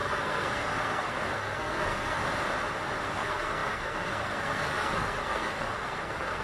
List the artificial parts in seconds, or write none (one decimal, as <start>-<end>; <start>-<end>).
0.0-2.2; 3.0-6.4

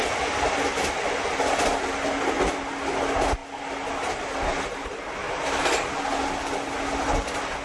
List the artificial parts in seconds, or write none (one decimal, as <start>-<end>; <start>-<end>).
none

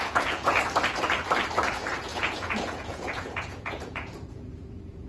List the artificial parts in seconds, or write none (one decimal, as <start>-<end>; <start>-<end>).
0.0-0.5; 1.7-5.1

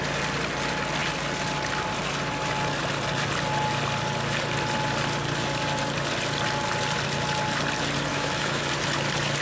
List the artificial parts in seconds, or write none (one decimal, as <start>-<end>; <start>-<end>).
8.1-8.7

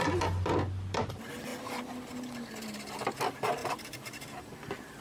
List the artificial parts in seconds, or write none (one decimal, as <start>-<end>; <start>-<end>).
3.6-5.0